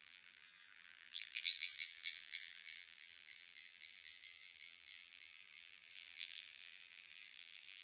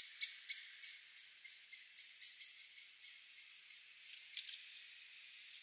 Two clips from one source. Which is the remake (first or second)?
first